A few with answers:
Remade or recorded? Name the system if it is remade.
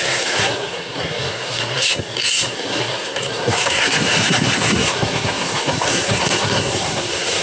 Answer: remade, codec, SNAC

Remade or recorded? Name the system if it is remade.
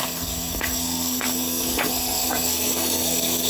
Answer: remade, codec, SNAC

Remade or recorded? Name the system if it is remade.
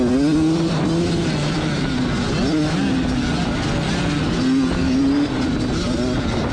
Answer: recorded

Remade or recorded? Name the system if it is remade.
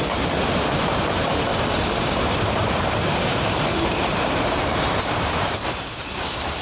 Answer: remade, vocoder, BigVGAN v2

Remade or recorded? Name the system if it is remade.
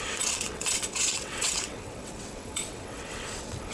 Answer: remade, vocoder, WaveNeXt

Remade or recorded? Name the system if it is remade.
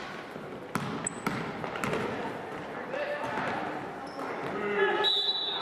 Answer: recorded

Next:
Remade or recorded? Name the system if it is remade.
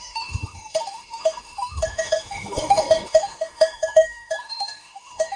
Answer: remade, autoencoder, DAC-VAE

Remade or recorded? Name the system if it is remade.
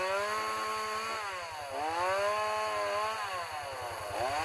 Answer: recorded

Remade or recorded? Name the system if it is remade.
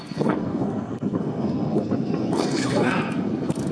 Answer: remade, codec, SNAC